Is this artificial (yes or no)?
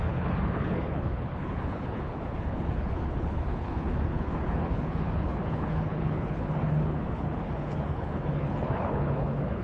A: yes